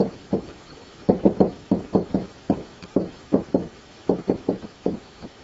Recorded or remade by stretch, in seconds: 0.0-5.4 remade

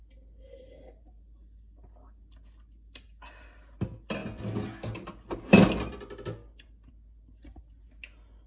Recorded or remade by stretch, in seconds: 0.0-8.5 recorded